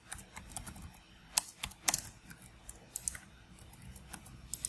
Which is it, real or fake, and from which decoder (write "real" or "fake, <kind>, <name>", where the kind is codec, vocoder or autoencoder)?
real